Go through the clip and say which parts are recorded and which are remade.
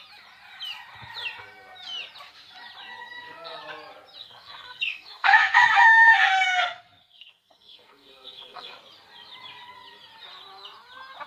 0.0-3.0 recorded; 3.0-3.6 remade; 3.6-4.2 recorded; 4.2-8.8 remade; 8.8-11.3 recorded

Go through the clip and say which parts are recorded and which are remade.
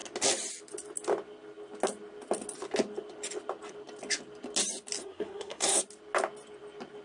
0.0-5.0 recorded; 5.0-5.8 remade; 5.8-7.0 recorded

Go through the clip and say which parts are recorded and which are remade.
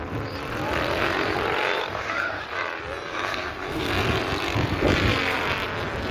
0.0-1.8 recorded; 1.8-2.4 remade; 2.4-3.1 recorded; 3.1-3.9 remade; 3.9-6.1 recorded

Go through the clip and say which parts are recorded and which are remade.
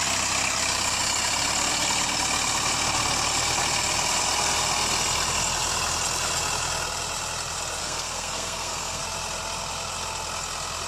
0.0-7.8 recorded; 7.8-9.0 remade; 9.0-10.9 recorded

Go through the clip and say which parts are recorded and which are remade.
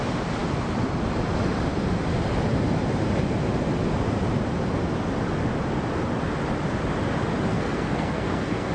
0.0-7.5 recorded; 7.5-8.7 remade